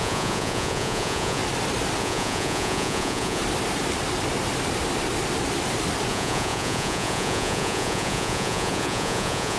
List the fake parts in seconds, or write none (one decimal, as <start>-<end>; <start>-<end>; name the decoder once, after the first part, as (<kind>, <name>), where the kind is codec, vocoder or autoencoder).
0.0-1.4 (vocoder, Vocos); 2.0-3.4; 6.1-9.6